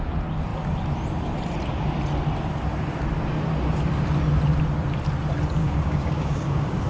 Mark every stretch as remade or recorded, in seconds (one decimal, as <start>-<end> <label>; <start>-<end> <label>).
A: 0.0-5.6 recorded; 5.6-6.9 remade